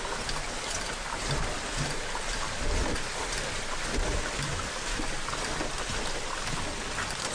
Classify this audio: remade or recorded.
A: recorded